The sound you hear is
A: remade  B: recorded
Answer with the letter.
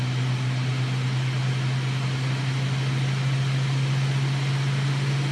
B